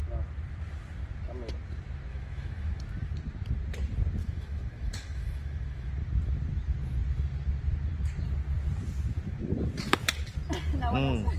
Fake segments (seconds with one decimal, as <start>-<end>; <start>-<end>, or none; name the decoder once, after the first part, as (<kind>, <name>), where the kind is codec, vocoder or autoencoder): 2.1-2.8 (autoencoder, DAC-VAE); 4.2-5.9